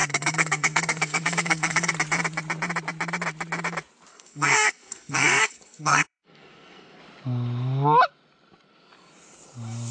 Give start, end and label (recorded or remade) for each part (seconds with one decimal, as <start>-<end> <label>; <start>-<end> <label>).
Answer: 0.0-1.9 remade; 1.9-4.1 recorded; 4.1-7.0 remade; 7.0-9.9 recorded